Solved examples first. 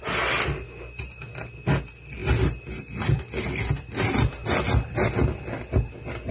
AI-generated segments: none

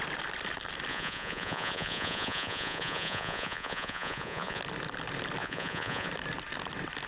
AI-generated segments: 0.9-4.6 (vocoder, Vocos); 5.4-6.1

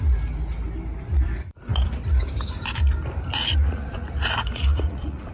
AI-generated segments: 3.6-5.3 (vocoder, Vocos)

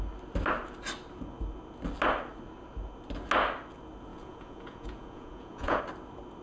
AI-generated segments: 4.1-5.8 (vocoder, Vocos)

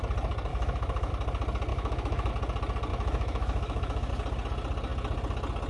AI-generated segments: 0.5-1.1 (autoencoder, DAC-VAE); 1.7-2.3; 2.9-4.1

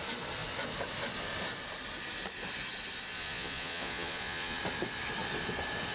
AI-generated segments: 3.1-4.6 (vocoder, Vocos)